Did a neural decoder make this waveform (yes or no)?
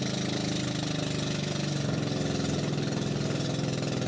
no